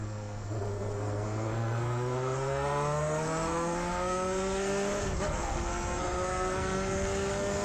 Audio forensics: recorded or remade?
remade